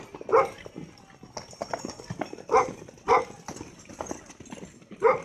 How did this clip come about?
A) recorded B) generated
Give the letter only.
A